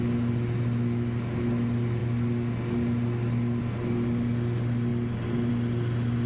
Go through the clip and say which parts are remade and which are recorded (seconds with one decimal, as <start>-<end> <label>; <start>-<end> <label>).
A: 0.0-6.3 recorded